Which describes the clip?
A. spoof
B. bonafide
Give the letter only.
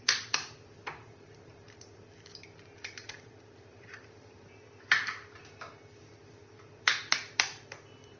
A